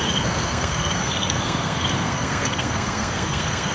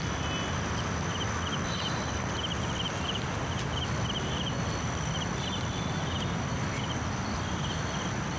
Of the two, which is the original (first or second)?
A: second